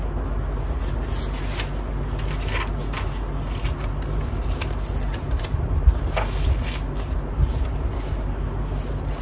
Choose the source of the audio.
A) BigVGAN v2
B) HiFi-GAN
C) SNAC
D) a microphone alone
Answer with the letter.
D